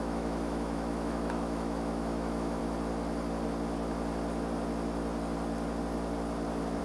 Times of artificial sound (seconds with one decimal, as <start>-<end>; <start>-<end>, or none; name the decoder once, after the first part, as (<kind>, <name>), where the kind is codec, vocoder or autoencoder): 0.0-2.6 (autoencoder, DAC-VAE)

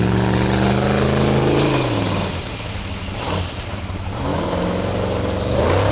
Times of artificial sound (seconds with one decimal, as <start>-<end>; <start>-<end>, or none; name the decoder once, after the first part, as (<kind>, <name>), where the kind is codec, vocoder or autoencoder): 4.3-4.9 (autoencoder, DAC-VAE)

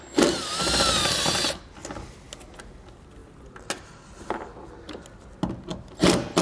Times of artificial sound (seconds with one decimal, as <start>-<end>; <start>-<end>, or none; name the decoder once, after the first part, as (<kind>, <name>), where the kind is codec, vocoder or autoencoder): none

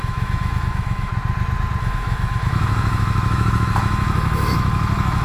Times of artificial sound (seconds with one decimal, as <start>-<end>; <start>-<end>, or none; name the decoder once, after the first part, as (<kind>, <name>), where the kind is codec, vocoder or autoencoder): 0.0-1.1 (autoencoder, DAC-VAE); 1.8-5.2

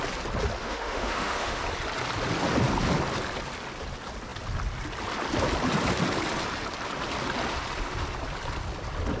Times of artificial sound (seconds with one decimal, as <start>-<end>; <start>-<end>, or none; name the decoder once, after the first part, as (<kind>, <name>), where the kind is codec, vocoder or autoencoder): 0.6-1.6 (autoencoder, DAC-VAE)

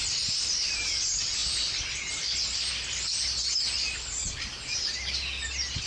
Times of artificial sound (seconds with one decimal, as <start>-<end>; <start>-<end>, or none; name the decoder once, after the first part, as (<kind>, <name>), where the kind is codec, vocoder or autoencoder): none

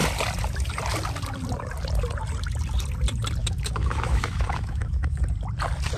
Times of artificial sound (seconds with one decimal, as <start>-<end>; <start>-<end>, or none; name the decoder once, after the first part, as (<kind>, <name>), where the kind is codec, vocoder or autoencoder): 3.4-5.2 (autoencoder, DAC-VAE)